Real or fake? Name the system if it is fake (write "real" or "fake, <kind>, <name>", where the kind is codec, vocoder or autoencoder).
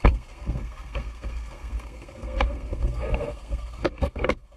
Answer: fake, codec, SNAC